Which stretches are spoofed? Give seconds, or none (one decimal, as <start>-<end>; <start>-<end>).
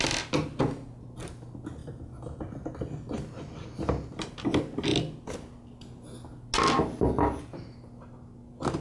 none